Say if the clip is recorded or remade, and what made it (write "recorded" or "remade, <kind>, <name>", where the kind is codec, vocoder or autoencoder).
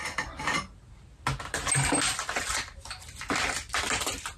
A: recorded